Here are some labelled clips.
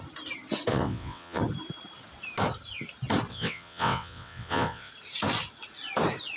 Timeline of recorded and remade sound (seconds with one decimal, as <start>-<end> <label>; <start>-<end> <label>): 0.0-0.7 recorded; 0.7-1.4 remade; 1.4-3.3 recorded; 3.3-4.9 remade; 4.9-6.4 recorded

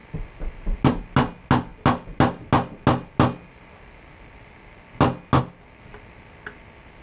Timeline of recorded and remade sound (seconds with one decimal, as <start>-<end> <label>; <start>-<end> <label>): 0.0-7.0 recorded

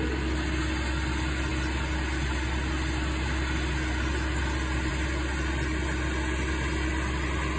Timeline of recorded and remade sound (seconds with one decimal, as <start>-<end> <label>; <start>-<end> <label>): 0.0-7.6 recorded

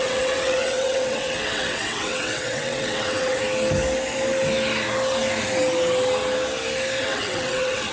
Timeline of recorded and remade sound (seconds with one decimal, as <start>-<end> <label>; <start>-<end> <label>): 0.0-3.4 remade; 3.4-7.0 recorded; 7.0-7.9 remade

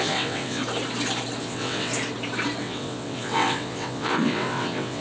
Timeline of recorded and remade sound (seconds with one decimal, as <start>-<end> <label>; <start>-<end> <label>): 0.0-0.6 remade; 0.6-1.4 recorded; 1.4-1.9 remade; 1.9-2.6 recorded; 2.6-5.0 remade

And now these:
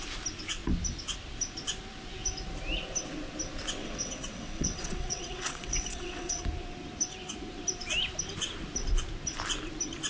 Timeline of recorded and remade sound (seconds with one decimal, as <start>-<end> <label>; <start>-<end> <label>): 0.0-3.8 recorded; 3.8-6.4 remade; 6.4-10.1 recorded

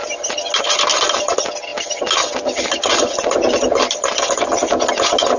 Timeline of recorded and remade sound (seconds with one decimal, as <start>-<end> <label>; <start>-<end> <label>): 0.0-5.4 recorded